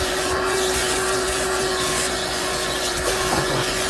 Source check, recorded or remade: remade